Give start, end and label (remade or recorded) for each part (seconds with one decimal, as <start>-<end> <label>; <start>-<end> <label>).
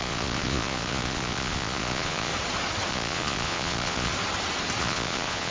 0.0-2.3 remade; 2.3-2.9 recorded; 2.9-4.1 remade; 4.1-4.8 recorded; 4.8-5.5 remade